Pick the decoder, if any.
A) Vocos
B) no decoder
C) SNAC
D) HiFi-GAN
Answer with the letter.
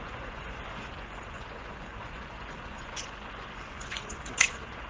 A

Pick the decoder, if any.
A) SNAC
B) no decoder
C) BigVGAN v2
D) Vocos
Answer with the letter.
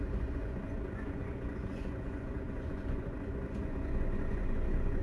D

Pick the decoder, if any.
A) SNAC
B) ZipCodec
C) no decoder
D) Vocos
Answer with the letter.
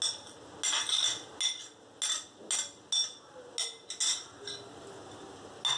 C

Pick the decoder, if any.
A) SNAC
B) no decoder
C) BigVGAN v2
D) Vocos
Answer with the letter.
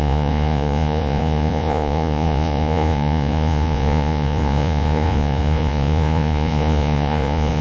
D